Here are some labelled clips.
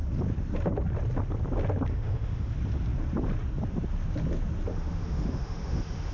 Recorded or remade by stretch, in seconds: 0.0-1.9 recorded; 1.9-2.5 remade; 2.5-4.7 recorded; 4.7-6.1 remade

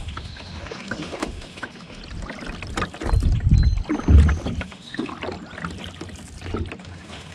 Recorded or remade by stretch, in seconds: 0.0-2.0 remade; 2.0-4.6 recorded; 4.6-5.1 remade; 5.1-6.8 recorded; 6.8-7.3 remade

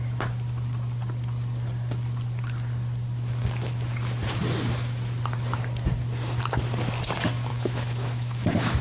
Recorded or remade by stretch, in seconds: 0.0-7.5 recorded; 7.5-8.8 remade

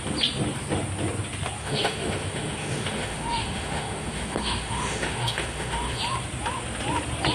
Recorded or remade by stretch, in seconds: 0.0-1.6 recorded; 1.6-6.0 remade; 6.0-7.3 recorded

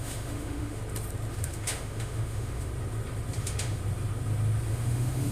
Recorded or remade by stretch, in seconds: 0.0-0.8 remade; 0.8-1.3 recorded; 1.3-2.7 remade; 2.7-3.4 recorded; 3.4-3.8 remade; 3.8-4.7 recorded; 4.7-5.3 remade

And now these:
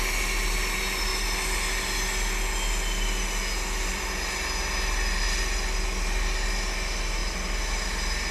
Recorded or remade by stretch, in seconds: 0.0-8.3 recorded

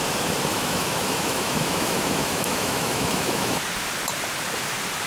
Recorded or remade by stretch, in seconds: 0.0-0.5 recorded; 0.5-3.6 remade; 3.6-5.1 recorded